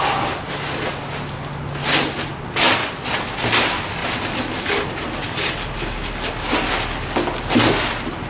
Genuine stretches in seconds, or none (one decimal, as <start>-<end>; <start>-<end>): 0.0-8.3